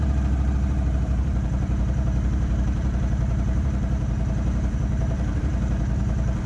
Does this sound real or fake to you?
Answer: fake